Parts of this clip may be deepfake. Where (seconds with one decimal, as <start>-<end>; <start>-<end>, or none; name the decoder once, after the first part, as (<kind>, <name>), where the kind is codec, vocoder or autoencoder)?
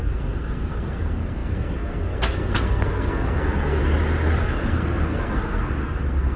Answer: 0.0-3.8 (codec, SNAC); 4.4-6.4